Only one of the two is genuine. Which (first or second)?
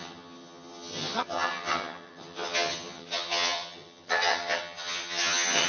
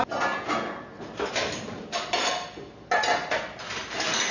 second